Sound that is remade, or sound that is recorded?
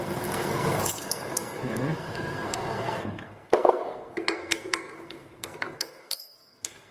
remade